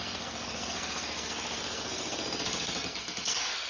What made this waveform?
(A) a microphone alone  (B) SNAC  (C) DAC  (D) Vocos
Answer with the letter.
B